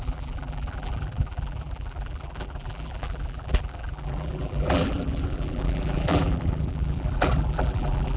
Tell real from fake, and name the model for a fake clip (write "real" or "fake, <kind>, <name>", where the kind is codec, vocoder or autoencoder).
fake, vocoder, BigVGAN v2